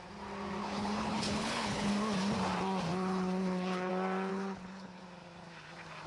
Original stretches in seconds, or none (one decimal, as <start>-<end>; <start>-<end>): 0.0-0.6; 1.9-2.9; 3.9-4.3; 5.0-6.1

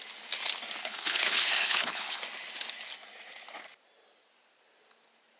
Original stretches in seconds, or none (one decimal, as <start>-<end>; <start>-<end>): 0.0-0.8; 2.2-5.4

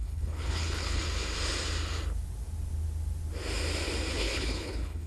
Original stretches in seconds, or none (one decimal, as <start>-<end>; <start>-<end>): 1.0-4.1

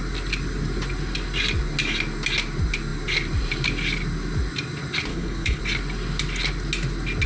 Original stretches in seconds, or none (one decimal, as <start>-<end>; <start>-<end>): 0.0-5.1; 5.6-7.3

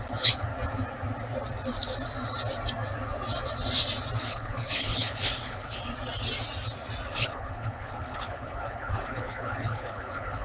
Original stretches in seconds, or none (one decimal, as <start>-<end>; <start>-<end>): 0.5-4.2; 5.8-7.1

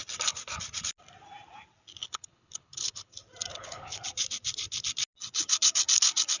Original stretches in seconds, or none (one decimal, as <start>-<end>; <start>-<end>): 0.0-2.0; 3.1-3.5; 4.0-6.4